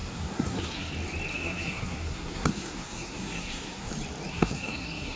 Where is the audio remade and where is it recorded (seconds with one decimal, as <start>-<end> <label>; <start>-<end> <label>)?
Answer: 0.0-0.9 remade; 0.9-1.3 recorded; 1.3-3.9 remade; 3.9-4.3 recorded; 4.3-5.2 remade